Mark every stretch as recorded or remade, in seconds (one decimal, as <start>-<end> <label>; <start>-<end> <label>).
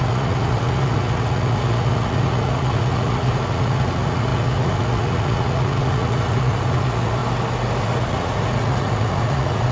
0.0-7.2 remade; 7.2-7.8 recorded; 7.8-9.7 remade